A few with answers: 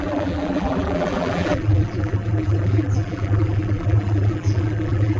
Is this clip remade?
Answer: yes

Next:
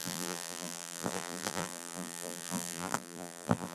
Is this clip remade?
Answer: yes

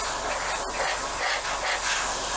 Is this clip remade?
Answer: no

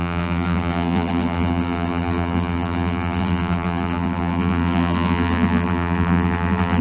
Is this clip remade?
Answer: yes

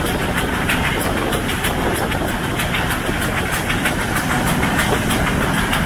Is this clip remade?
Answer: yes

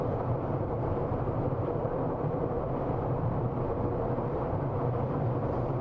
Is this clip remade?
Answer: yes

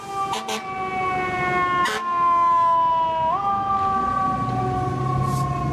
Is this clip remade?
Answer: no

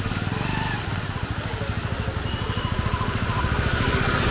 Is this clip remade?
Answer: no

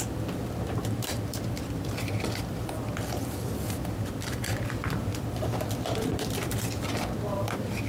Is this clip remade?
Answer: yes